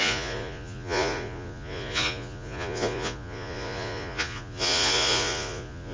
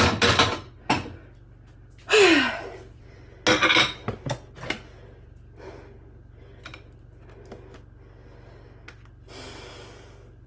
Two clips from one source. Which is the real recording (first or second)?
second